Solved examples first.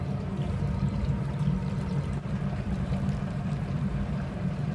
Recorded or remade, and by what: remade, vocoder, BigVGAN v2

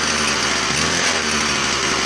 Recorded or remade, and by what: recorded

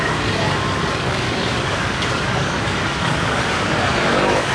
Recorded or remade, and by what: remade, codec, DAC